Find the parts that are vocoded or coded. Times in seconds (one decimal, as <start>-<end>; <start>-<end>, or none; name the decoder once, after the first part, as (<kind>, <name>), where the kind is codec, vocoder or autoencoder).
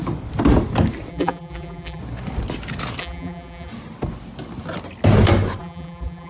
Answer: 1.1-2.0 (vocoder, BigVGAN v2); 3.0-3.7; 5.6-6.3